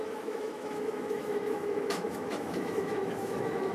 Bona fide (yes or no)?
no